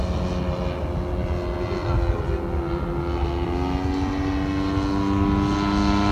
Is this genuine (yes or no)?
yes